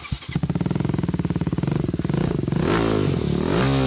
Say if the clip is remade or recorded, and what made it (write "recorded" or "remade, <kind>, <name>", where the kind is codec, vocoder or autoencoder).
recorded